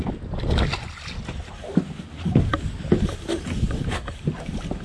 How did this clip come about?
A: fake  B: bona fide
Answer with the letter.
B